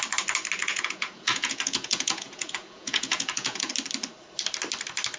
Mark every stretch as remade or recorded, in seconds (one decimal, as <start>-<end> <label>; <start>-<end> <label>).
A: 0.0-0.6 recorded; 0.6-3.7 remade; 3.7-5.2 recorded